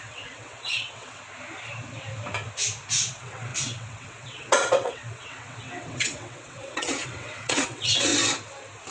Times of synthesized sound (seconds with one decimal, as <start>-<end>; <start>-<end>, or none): 0.0-1.2; 3.1-8.1